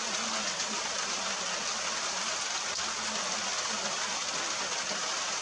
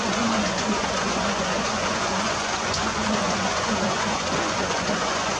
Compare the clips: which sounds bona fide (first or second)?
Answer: first